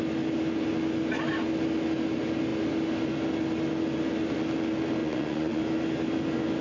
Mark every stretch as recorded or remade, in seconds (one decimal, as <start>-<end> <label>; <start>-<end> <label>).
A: 0.0-5.0 recorded; 5.0-5.6 remade; 5.6-6.6 recorded